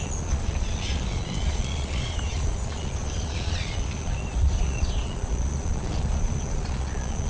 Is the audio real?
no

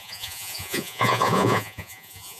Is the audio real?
no